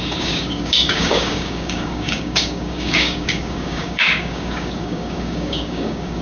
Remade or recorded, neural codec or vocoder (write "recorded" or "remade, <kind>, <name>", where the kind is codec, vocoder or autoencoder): remade, codec, DAC